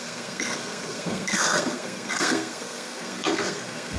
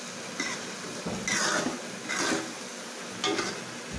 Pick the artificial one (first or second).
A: first